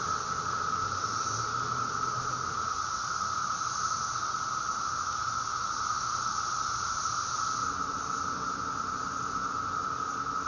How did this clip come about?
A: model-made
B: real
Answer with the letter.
B